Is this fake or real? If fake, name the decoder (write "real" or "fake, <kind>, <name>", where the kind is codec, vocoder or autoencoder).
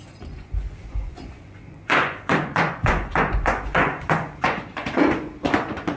fake, vocoder, Vocos